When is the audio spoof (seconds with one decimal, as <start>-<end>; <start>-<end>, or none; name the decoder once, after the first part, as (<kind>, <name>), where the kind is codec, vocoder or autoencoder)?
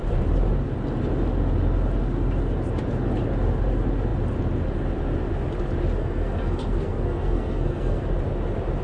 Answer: 6.0-8.1 (codec, SNAC)